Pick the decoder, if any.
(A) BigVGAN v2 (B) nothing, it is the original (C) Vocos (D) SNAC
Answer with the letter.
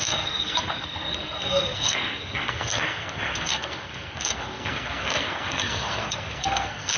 D